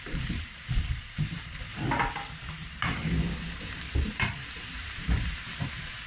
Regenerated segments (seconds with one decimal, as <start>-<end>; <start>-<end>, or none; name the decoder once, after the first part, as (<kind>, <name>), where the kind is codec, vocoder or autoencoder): 0.0-1.7 (vocoder, BigVGAN v2); 2.4-3.0; 3.5-6.1